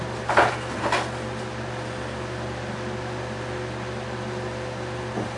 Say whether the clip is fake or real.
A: real